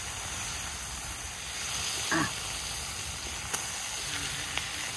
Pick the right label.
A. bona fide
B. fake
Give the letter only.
A